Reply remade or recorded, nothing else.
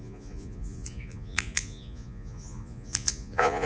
remade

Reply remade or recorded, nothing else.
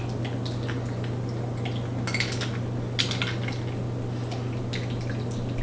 recorded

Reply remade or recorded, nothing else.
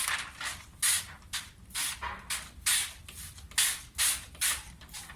recorded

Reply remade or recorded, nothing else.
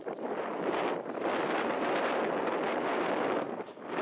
recorded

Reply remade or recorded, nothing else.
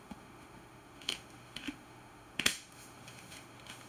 remade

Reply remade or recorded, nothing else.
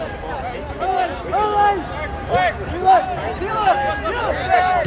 recorded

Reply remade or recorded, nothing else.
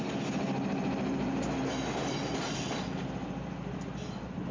recorded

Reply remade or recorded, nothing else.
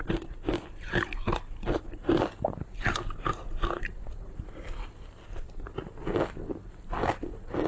recorded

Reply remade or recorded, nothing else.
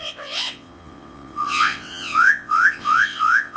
remade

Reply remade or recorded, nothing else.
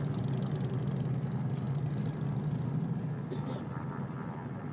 recorded